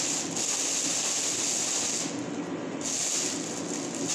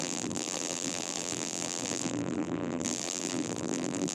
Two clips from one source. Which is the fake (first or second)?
second